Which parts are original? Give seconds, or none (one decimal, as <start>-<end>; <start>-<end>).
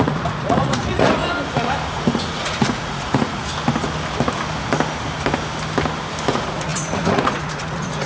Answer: 1.2-1.9; 3.5-6.3